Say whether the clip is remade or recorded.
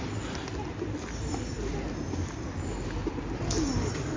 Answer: recorded